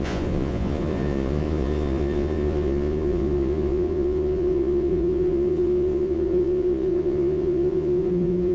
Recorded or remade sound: remade